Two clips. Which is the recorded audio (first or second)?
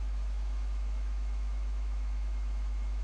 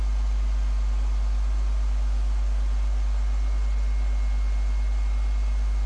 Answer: second